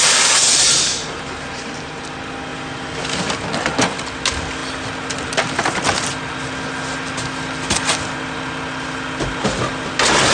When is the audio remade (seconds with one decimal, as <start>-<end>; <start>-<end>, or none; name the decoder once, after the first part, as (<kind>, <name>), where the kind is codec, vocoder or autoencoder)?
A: 0.9-1.9 (vocoder, BigVGAN v2)